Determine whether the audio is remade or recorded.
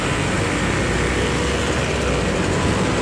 recorded